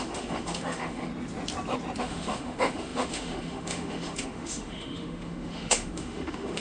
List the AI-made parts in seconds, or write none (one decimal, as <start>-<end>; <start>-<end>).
0.0-1.1; 2.0-6.6